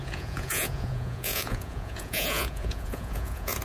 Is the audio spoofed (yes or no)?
yes